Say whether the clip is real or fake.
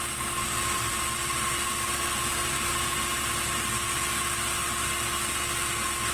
real